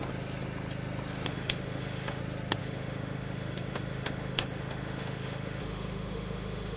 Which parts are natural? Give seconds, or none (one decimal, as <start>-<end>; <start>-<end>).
0.0-1.3; 2.2-2.6